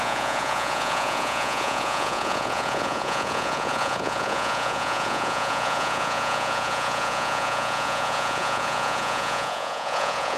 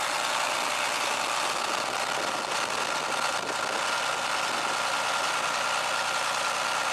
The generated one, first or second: first